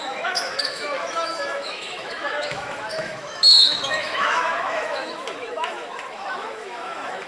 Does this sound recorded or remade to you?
remade